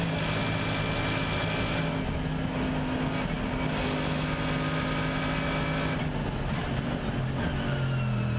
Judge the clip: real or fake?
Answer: real